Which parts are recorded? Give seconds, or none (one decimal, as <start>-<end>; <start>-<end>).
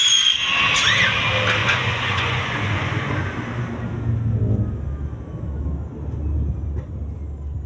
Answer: 0.0-1.6; 3.1-7.7